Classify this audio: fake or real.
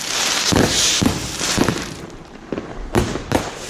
fake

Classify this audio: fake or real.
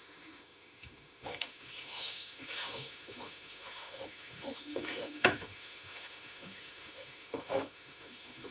fake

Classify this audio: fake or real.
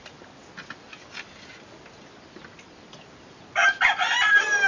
real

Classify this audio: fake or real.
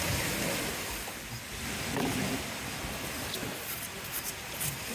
real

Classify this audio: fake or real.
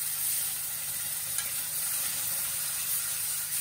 real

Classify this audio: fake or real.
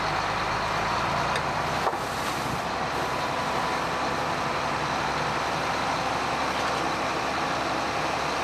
real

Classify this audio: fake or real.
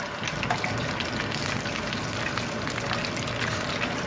real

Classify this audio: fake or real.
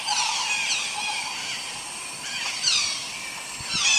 real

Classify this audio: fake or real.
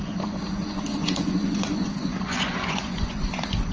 fake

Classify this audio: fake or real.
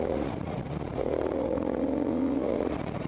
fake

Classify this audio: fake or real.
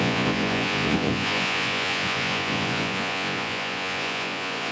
fake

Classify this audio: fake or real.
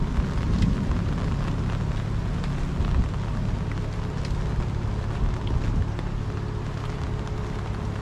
real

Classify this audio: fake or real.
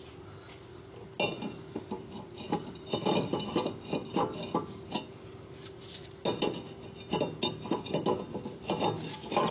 real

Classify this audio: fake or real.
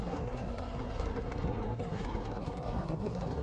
fake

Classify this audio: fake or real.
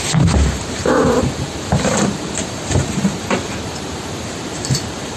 fake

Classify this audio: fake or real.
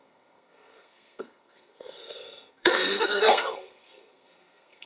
fake